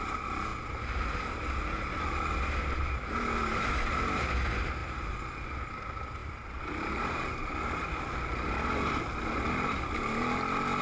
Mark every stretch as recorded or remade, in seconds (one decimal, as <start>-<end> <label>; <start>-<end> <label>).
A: 0.0-6.2 recorded; 6.2-7.7 remade; 7.7-10.8 recorded